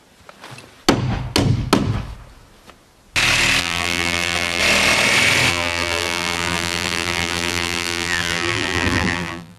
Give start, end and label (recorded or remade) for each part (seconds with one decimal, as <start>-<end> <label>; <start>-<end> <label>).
0.0-3.6 recorded; 3.6-4.6 remade; 4.6-5.5 recorded; 5.5-9.6 remade

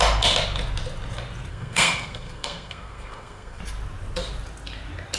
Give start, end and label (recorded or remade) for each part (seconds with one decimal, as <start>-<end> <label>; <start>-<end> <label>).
0.0-1.5 recorded; 1.5-3.6 remade; 3.6-5.2 recorded

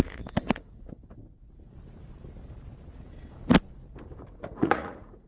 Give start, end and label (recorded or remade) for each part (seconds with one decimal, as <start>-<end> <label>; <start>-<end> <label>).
0.0-1.0 remade; 1.0-4.2 recorded; 4.2-5.3 remade